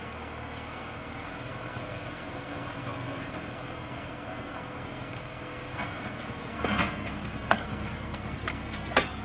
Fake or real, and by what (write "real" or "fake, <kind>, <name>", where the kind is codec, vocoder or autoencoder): fake, codec, SNAC